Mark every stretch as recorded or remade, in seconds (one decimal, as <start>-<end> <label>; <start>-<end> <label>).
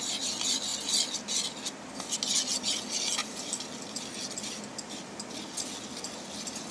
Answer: 0.0-6.7 recorded